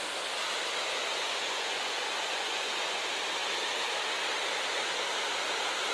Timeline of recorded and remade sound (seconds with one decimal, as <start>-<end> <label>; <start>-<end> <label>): 0.0-1.0 recorded; 1.0-3.0 remade; 3.0-5.9 recorded